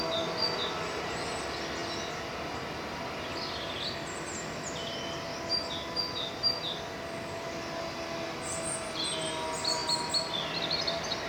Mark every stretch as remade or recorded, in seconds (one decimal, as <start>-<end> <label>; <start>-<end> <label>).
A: 0.0-11.3 recorded